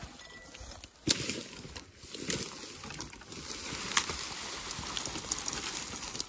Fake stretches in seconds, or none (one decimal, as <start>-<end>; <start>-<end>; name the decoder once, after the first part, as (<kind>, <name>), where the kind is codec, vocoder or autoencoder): none